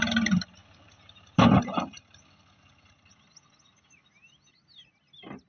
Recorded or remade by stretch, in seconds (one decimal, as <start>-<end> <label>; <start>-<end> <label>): 0.0-0.6 recorded; 0.6-2.3 remade; 2.3-5.5 recorded

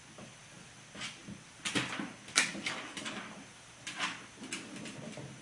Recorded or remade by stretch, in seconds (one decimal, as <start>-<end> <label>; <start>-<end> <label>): 0.0-5.4 recorded

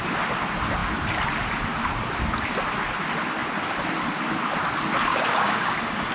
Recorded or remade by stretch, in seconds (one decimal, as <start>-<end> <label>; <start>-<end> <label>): 0.0-5.1 recorded; 5.1-6.1 remade